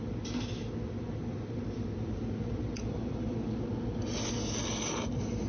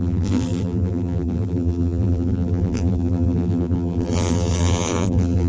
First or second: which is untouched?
first